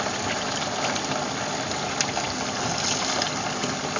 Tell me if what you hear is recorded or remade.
recorded